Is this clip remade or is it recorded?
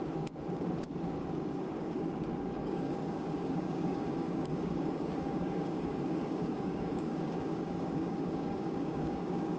remade